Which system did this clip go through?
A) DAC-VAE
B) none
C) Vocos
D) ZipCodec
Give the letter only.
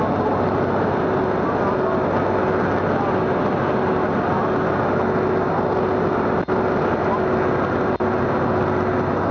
B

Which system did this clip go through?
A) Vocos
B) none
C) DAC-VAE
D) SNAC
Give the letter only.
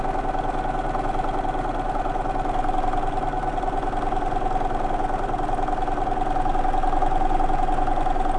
B